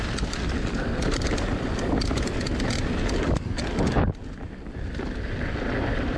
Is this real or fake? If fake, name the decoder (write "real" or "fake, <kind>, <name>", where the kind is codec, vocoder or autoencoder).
real